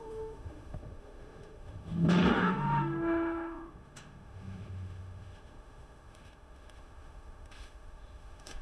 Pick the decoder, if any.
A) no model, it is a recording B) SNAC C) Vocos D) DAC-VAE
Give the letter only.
D